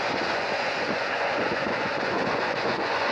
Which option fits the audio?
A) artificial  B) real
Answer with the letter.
A